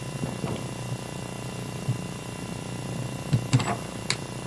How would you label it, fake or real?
real